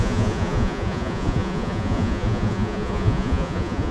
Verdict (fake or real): fake